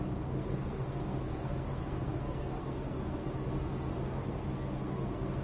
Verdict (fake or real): fake